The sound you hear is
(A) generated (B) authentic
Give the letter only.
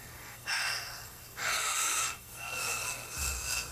A